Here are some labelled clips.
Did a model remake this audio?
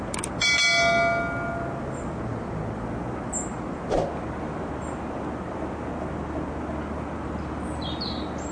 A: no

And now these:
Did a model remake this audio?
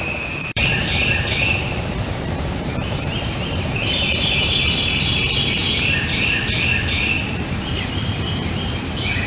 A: yes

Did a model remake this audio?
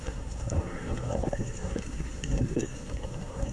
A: yes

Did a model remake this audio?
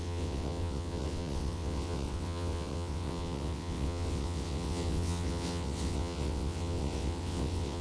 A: yes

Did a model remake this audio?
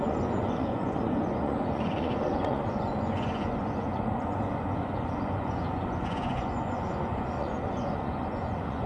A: yes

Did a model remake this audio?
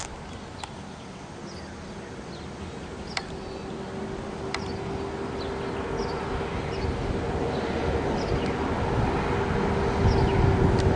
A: no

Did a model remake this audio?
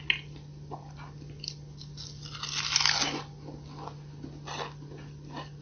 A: no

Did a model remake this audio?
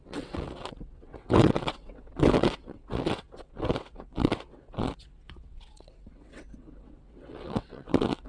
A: yes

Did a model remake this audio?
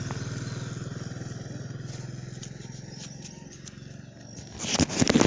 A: no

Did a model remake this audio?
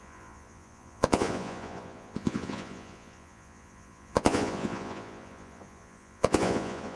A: yes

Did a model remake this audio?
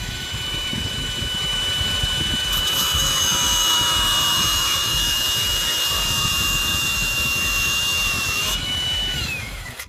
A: yes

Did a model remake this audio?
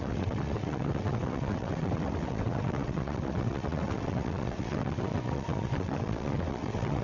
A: yes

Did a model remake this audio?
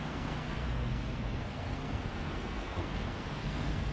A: yes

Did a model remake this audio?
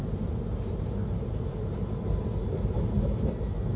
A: yes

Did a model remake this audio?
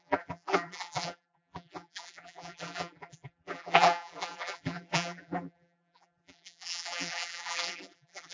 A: yes